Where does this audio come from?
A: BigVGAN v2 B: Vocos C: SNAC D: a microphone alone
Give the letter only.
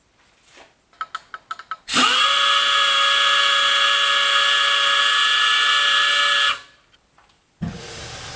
D